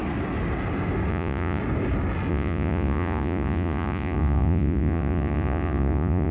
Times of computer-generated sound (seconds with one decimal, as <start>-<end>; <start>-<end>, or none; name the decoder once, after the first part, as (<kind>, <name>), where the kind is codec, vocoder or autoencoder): 1.1-1.6 (vocoder, Vocos); 2.3-6.3

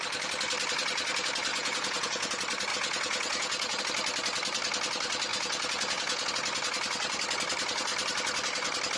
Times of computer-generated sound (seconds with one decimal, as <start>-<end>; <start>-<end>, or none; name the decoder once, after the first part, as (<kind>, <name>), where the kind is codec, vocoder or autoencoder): 1.5-2.3 (vocoder, Vocos); 2.7-3.8; 5.3-6.3

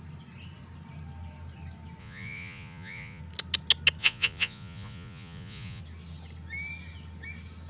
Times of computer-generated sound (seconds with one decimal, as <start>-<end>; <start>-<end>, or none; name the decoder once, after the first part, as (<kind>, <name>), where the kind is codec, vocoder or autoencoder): 2.0-3.2 (vocoder, Vocos); 4.0-5.8

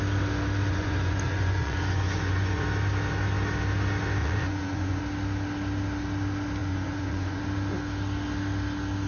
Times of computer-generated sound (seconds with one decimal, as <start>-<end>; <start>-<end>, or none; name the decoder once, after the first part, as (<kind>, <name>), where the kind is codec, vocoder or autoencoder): 0.7-2.6 (vocoder, Vocos); 4.2-5.0; 6.6-7.4

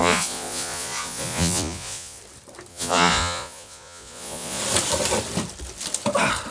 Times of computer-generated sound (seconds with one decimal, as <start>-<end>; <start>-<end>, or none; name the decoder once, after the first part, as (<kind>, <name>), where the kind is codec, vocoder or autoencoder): 0.0-2.2 (vocoder, Vocos); 2.7-4.6

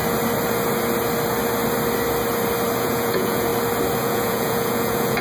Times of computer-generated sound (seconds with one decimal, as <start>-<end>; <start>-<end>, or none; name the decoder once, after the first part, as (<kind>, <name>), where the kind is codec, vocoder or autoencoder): 2.8-3.5 (vocoder, Vocos); 4.0-5.2